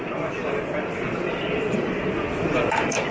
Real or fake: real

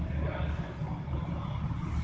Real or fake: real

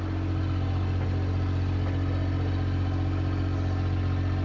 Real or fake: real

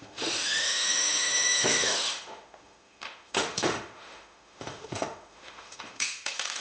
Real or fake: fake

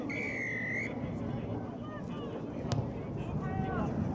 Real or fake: real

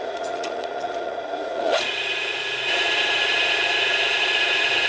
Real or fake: fake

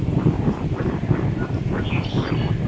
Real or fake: real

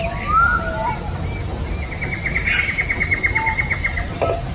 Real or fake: real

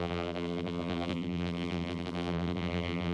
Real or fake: fake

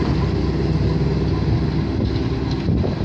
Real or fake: real